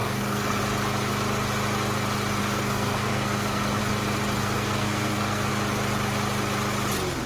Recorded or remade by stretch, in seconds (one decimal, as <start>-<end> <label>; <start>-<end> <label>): 0.0-0.6 remade; 0.6-2.4 recorded; 2.4-3.8 remade; 3.8-4.4 recorded; 4.4-5.5 remade; 5.5-7.3 recorded